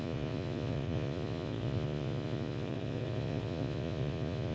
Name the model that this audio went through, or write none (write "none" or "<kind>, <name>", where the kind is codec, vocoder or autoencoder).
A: vocoder, Vocos